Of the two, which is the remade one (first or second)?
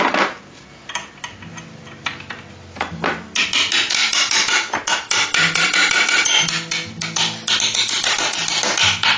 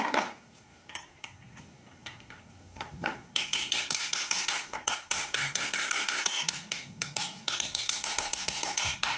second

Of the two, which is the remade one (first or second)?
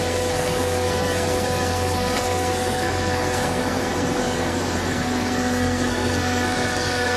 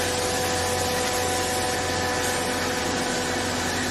first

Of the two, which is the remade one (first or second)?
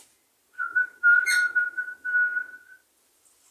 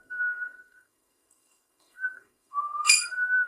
second